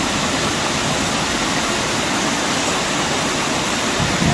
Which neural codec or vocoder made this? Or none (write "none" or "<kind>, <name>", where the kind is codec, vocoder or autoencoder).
none